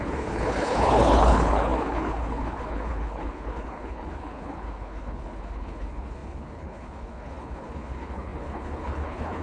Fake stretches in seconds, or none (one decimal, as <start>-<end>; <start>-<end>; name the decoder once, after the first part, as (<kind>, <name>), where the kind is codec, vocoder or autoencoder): 0.0-9.4 (codec, HILCodec)